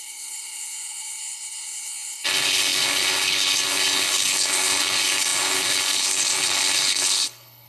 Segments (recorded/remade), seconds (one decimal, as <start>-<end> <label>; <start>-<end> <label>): 0.0-7.7 remade